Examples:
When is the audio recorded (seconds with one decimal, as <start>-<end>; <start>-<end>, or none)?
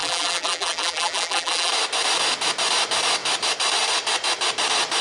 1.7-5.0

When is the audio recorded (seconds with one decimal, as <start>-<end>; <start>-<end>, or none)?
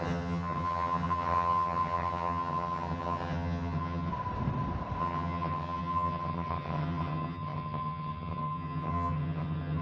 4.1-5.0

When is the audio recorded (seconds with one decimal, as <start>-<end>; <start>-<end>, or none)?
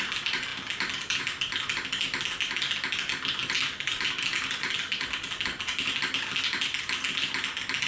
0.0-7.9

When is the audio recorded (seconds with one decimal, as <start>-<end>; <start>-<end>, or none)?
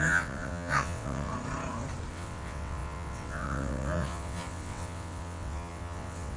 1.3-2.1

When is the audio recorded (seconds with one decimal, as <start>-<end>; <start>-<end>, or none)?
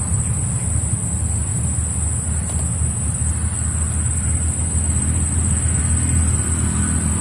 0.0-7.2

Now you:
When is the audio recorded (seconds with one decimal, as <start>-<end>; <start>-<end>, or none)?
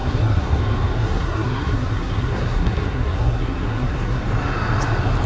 0.6-1.0; 4.2-5.3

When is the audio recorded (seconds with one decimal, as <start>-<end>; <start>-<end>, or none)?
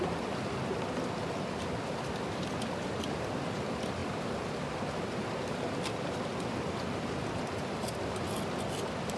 0.0-9.2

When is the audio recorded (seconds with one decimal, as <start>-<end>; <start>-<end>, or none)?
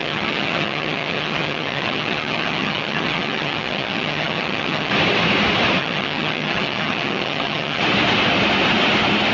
4.9-5.8; 7.8-9.3